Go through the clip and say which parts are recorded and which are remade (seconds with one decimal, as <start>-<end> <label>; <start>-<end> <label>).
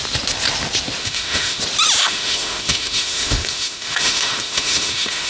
0.0-1.0 recorded; 1.0-1.6 remade; 1.6-2.0 recorded; 2.0-5.3 remade